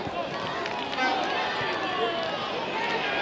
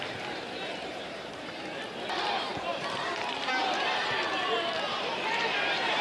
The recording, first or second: first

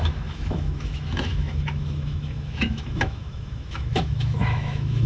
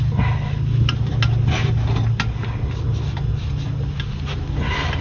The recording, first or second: second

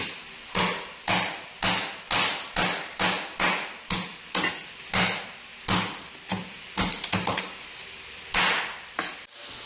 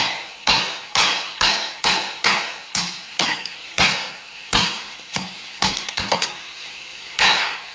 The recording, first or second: first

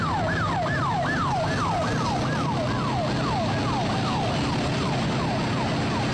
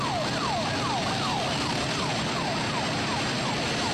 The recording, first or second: first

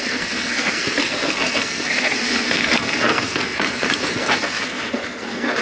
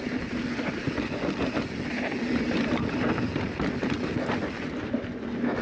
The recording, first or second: second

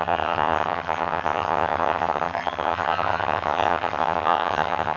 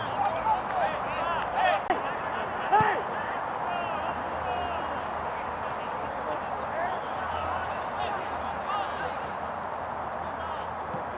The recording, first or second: second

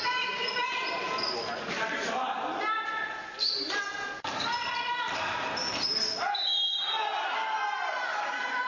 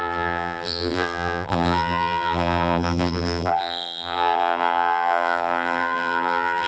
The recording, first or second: first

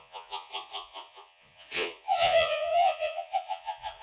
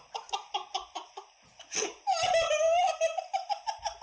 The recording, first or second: second